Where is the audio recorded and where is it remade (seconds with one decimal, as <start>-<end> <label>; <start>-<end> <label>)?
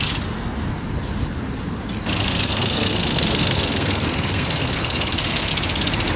0.0-2.3 recorded; 2.3-5.5 remade; 5.5-6.2 recorded